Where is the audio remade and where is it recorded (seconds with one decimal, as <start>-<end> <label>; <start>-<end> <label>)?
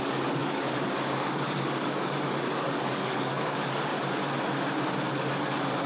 0.0-3.9 remade; 3.9-5.1 recorded; 5.1-5.9 remade